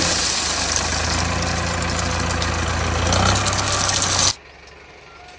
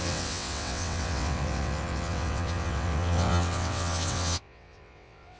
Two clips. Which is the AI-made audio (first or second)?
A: second